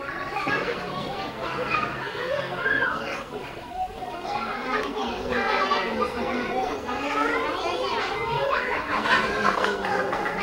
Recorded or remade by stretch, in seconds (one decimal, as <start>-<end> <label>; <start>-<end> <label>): 0.0-7.3 remade; 7.3-8.0 recorded; 8.0-10.4 remade